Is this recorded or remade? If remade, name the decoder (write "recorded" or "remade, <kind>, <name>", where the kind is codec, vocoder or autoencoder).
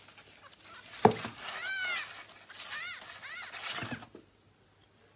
recorded